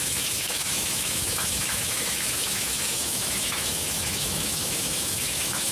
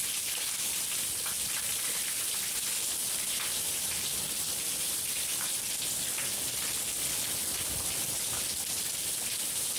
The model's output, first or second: first